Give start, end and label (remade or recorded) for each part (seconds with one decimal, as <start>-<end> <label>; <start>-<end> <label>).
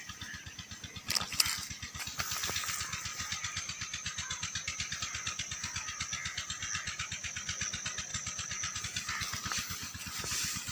0.0-3.1 recorded; 3.1-5.0 remade; 5.0-10.7 recorded